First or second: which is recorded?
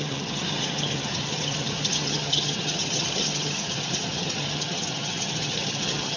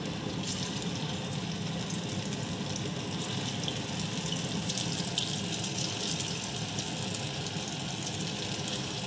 second